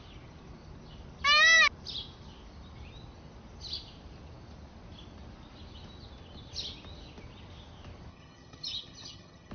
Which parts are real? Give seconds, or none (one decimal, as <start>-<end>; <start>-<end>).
0.0-8.1